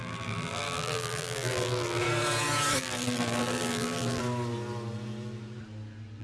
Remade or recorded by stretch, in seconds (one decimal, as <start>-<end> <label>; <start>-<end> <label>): 0.0-2.0 remade; 2.0-2.8 recorded; 2.8-4.2 remade; 4.2-6.2 recorded